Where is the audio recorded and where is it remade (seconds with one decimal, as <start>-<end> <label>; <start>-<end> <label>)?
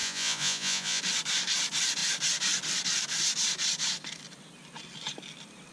0.0-1.0 remade; 1.0-5.7 recorded